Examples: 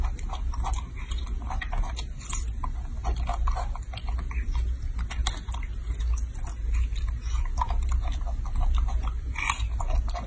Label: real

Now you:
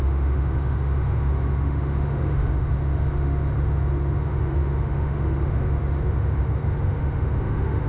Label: fake